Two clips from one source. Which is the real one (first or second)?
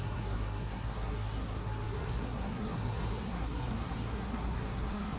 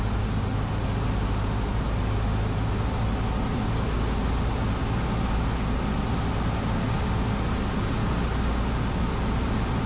second